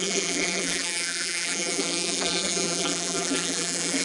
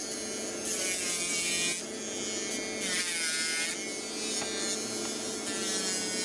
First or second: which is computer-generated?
first